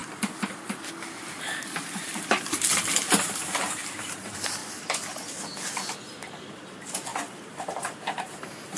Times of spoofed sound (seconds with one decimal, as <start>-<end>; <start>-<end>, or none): 1.3-4.6; 6.3-8.8